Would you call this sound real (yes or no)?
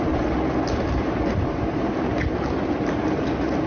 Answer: yes